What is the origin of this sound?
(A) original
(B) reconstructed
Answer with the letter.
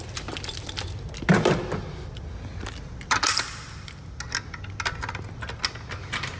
A